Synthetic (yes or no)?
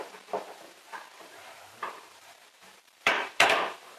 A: yes